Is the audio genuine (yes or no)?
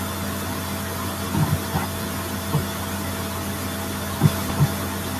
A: yes